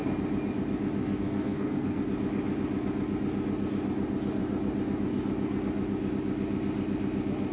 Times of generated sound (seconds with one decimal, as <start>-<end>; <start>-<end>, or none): 1.0-2.0